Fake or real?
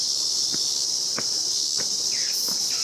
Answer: real